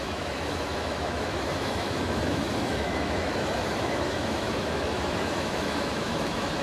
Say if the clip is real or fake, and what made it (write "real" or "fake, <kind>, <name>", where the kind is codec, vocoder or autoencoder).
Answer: fake, autoencoder, DAC-VAE